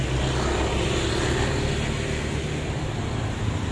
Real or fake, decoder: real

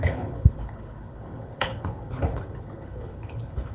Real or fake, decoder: fake, codec, HILCodec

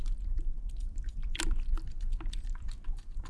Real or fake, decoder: real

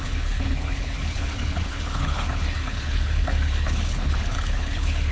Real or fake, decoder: fake, codec, HILCodec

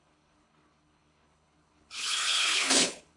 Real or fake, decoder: fake, codec, HILCodec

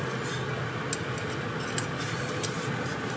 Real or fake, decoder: real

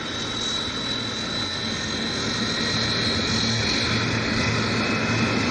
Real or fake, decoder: real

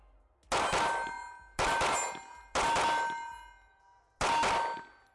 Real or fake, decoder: real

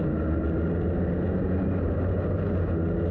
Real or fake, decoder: real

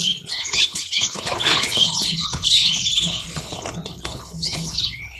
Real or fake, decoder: fake, codec, HILCodec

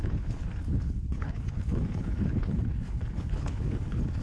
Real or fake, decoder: fake, codec, HILCodec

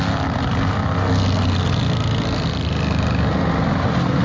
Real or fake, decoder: real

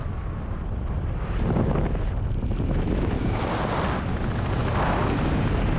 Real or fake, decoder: real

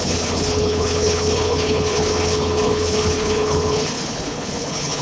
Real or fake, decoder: fake, codec, HILCodec